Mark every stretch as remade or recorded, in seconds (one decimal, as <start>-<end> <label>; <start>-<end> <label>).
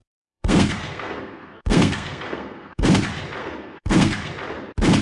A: 0.0-3.0 remade; 3.0-3.4 recorded; 3.4-4.3 remade; 4.3-5.0 recorded